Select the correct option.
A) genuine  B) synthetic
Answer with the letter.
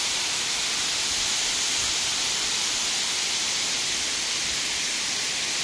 A